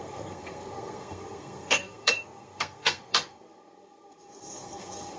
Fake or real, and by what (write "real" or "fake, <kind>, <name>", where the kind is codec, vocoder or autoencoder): fake, codec, SNAC